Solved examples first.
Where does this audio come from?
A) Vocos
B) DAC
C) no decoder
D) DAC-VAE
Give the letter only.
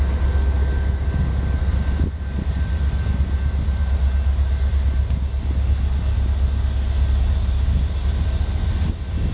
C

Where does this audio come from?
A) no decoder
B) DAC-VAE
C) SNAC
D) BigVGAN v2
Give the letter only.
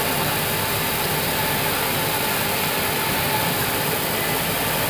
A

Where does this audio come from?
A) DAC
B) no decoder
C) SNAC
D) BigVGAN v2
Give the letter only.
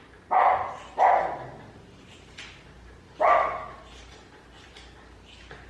B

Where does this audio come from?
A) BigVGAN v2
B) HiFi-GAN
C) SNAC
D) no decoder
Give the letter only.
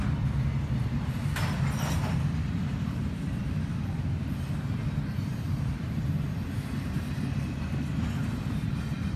A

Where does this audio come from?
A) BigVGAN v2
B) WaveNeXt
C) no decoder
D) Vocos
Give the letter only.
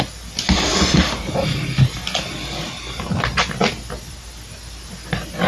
C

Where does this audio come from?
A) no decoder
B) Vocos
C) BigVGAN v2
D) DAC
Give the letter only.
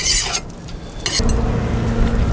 A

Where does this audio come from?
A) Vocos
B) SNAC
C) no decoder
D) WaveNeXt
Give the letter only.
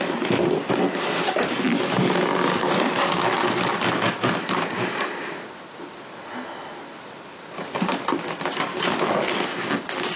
C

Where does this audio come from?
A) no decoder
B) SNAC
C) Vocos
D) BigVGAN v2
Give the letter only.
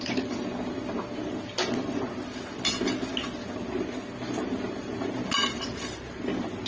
A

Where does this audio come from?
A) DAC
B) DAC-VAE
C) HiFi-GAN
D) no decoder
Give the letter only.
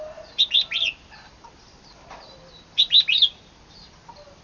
D